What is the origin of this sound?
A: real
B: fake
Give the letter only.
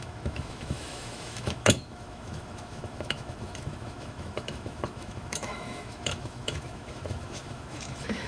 B